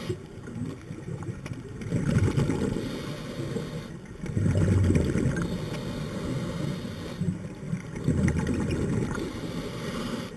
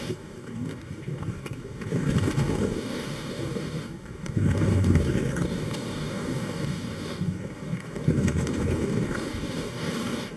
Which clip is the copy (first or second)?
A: second